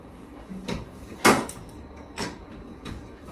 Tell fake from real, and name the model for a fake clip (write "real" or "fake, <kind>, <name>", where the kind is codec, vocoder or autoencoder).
fake, codec, DAC